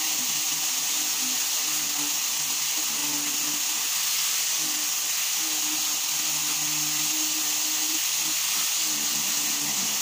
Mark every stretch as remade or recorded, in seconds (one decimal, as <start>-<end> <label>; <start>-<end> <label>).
0.0-10.0 recorded